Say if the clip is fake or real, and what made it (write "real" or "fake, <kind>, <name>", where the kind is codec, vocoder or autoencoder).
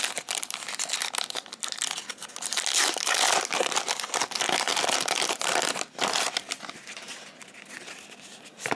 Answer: real